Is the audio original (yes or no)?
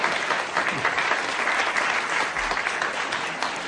yes